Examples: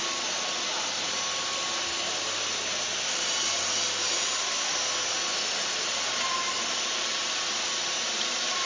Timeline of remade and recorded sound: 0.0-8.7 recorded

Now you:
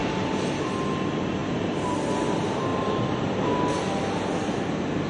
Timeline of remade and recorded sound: 0.0-0.7 remade; 0.7-1.4 recorded; 1.4-1.9 remade; 1.9-2.7 recorded; 2.7-3.5 remade; 3.5-5.1 recorded

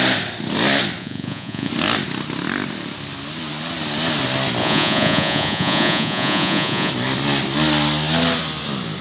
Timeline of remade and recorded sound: 0.0-1.0 recorded; 1.0-1.7 remade; 1.7-4.6 recorded; 4.6-6.9 remade; 6.9-9.0 recorded